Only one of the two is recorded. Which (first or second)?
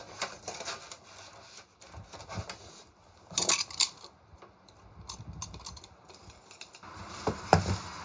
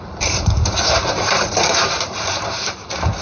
first